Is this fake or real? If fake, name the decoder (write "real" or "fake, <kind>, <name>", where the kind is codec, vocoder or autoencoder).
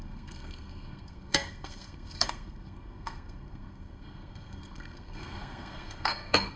fake, codec, SNAC